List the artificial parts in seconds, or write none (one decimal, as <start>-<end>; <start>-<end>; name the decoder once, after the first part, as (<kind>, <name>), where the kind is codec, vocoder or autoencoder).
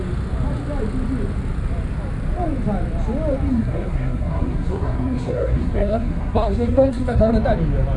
3.5-7.3 (codec, SNAC)